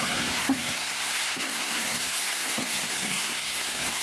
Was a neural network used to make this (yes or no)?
yes